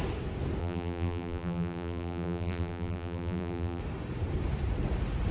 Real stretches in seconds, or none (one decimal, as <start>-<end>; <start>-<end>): 0.0-0.6; 3.8-5.3